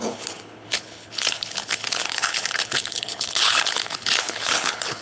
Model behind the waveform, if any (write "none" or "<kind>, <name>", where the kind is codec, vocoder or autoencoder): codec, HILCodec